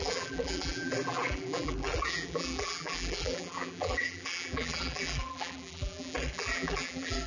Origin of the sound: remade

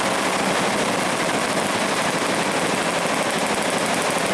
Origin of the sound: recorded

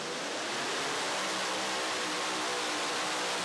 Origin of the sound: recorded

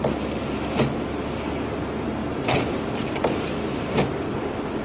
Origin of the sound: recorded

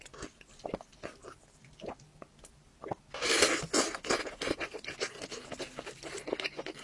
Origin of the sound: recorded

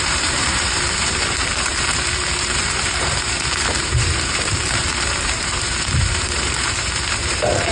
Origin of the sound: remade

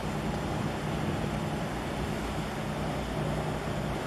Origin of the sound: recorded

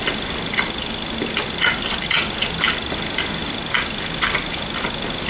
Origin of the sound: recorded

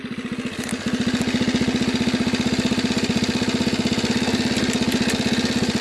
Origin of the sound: recorded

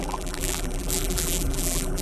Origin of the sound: remade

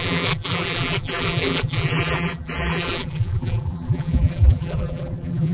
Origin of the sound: remade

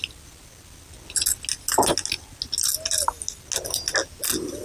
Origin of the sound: recorded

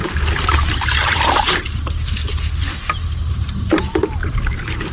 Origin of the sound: remade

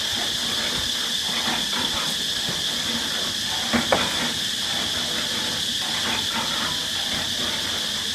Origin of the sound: recorded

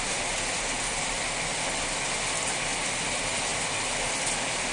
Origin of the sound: recorded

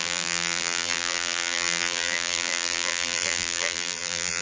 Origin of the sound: remade